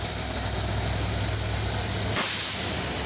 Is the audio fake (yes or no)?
no